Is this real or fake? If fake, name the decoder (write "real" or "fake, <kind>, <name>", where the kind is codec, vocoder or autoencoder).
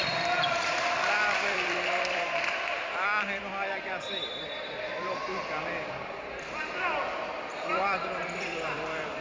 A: fake, vocoder, BigVGAN v2